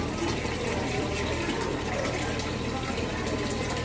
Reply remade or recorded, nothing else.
recorded